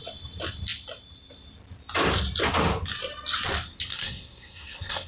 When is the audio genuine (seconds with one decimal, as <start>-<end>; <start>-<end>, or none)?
0.0-3.9